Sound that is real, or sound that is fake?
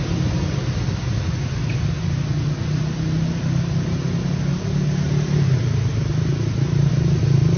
real